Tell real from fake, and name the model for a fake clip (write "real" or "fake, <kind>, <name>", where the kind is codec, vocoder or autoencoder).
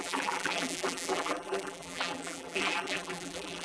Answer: fake, vocoder, BigVGAN v2